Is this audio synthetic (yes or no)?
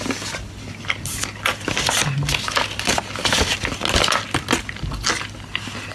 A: no